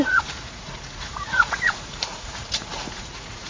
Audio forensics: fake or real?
fake